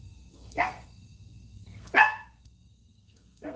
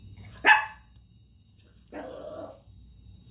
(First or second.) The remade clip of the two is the first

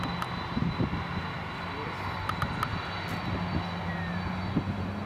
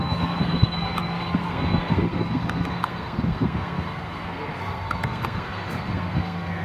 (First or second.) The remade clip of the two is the second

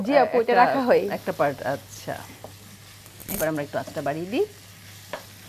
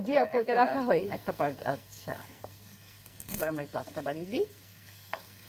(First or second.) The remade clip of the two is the second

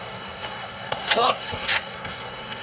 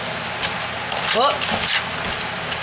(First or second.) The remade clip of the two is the first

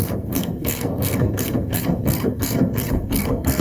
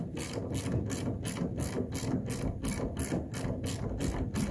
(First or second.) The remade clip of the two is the first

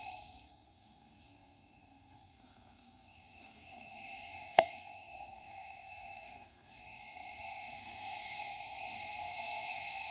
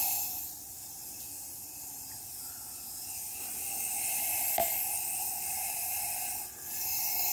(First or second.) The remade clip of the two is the first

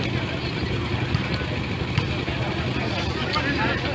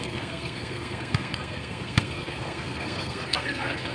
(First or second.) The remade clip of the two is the second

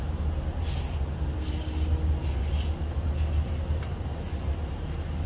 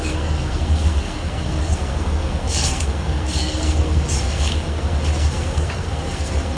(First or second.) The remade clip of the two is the second